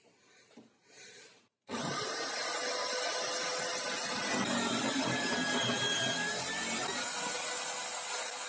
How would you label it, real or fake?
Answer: real